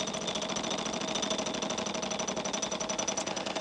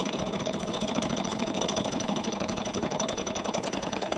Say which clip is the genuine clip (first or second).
first